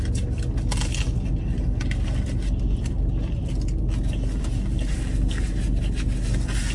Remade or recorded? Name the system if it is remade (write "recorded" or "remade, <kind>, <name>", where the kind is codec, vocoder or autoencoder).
recorded